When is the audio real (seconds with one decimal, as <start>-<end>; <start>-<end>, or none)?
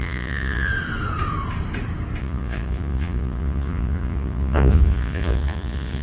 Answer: 0.7-2.2